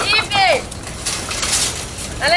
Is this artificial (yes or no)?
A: no